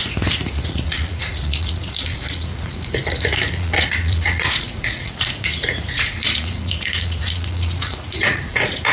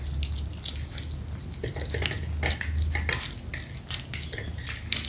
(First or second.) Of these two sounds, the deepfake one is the first